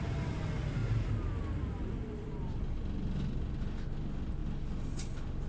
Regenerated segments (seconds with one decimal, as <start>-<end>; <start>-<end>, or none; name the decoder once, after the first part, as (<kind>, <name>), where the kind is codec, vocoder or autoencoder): none